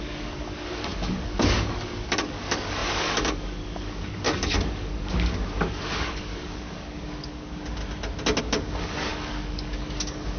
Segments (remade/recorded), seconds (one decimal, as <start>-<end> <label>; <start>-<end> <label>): 0.0-7.8 remade; 7.8-8.4 recorded; 8.4-10.4 remade